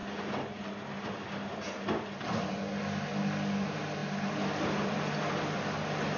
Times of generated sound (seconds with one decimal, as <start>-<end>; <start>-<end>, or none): none